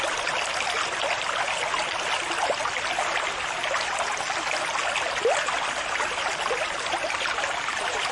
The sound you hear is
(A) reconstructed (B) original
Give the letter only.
B